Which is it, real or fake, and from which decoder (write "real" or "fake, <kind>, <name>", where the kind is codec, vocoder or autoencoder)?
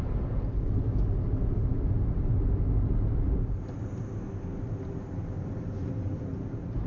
real